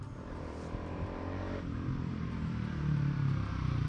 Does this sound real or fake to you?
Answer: fake